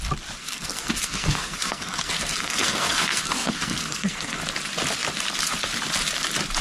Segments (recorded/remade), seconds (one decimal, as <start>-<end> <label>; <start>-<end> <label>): 0.0-0.4 recorded; 0.4-4.4 remade; 4.4-6.6 recorded